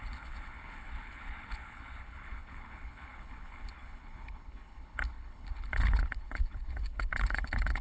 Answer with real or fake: fake